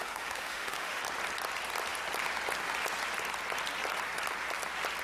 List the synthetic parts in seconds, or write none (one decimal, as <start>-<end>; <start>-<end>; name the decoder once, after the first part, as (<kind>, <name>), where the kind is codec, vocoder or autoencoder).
0.0-1.0 (autoencoder, DAC-VAE)